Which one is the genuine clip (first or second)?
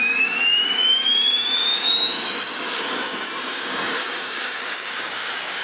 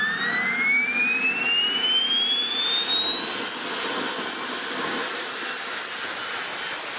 second